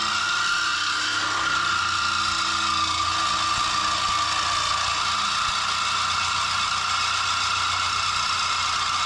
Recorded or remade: recorded